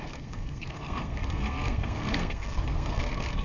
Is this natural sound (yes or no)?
no